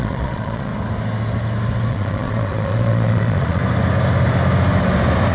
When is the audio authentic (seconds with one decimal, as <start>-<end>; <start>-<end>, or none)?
0.7-1.9; 3.6-5.3